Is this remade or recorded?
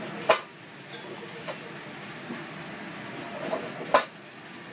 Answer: recorded